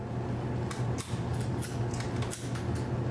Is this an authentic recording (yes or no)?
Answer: yes